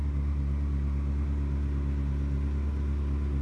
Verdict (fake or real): real